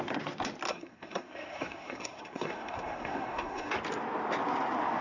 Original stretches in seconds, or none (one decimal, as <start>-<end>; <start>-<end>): 0.0-0.7; 3.7-5.0